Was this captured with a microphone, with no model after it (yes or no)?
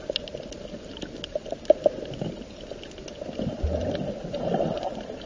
yes